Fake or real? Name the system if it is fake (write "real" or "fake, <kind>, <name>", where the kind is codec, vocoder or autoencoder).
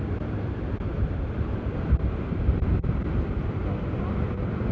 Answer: fake, vocoder, BigVGAN v2